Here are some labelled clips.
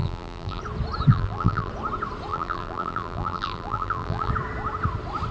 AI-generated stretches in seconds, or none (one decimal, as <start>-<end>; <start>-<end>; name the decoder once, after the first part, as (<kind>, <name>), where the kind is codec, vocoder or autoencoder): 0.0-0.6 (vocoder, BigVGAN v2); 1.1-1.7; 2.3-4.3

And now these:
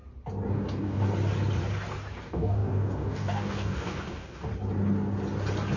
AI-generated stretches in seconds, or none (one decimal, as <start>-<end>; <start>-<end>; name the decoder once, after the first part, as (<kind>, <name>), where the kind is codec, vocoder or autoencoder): 0.5-1.1 (codec, DAC); 2.1-4.5

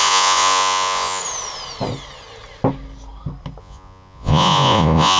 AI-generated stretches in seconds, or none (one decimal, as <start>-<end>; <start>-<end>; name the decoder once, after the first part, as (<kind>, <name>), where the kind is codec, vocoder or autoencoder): 0.0-1.2 (vocoder, Vocos); 3.6-5.2